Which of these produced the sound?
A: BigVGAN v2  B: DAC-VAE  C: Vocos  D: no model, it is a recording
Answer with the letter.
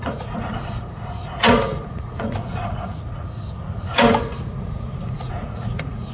C